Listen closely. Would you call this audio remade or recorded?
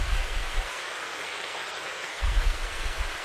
remade